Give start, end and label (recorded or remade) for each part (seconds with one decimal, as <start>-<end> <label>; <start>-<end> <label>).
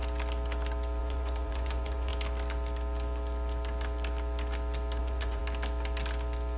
0.0-1.0 recorded; 1.0-2.1 remade; 2.1-5.0 recorded; 5.0-5.4 remade; 5.4-6.6 recorded